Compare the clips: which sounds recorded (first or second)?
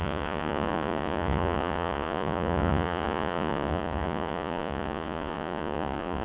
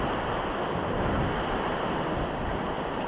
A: second